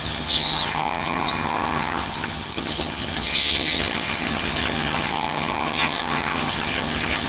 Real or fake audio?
fake